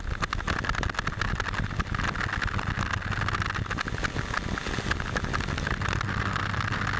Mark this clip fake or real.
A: real